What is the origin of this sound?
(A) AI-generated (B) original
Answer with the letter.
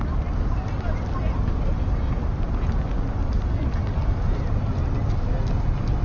B